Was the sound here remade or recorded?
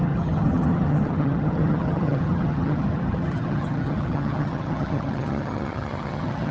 remade